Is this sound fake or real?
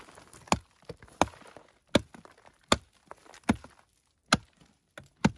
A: real